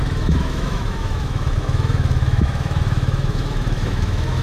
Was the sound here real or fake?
fake